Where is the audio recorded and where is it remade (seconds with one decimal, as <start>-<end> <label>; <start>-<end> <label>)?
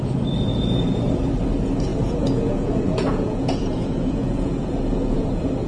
0.0-0.5 recorded; 0.5-1.1 remade; 1.1-1.9 recorded; 1.9-5.3 remade; 5.3-5.7 recorded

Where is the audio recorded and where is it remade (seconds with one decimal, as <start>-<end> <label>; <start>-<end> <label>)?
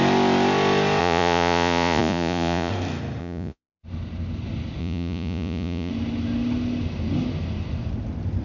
0.0-1.0 recorded; 1.0-2.7 remade; 2.7-3.2 recorded; 3.2-3.8 remade; 3.8-4.8 recorded; 4.8-5.9 remade; 5.9-8.4 recorded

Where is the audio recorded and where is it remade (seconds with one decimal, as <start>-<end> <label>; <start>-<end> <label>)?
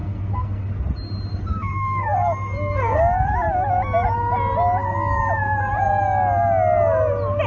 0.0-0.7 remade; 0.7-1.5 recorded; 1.5-3.0 remade; 3.0-7.5 recorded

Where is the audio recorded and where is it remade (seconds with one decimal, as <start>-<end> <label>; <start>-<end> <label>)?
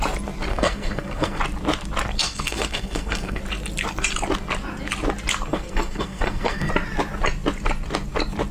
0.0-0.5 recorded; 0.5-1.4 remade; 1.4-2.2 recorded; 2.2-3.4 remade; 3.4-5.5 recorded; 5.5-6.7 remade; 6.7-8.5 recorded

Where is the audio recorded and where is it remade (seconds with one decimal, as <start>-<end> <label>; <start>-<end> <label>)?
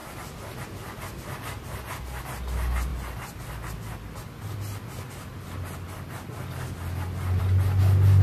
0.0-8.2 recorded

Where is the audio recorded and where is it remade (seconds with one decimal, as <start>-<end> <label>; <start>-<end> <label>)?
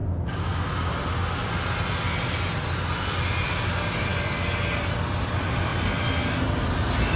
0.0-7.2 recorded